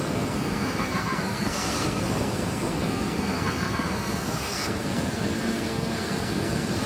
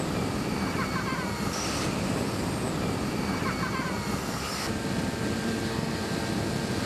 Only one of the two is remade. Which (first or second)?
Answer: first